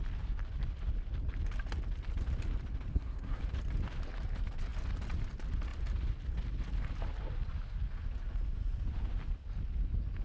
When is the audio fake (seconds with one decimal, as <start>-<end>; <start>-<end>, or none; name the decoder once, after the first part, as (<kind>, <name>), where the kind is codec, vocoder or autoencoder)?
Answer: 2.9-3.4 (codec, SNAC)